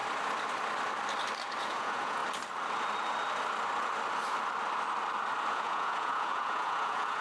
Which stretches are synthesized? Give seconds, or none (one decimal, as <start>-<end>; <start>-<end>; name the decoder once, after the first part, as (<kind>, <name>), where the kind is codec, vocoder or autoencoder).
1.6-2.2 (vocoder, Vocos); 5.5-7.2